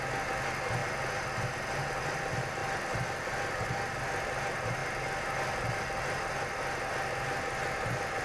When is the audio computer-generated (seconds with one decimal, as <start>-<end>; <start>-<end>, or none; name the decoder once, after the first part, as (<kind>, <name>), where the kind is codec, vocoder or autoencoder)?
none